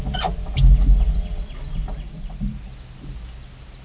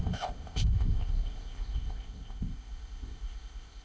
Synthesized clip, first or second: second